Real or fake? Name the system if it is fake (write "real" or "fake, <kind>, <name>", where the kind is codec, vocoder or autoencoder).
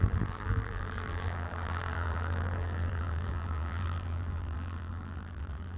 fake, vocoder, BigVGAN v2